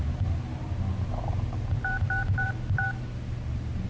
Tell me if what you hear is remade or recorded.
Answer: remade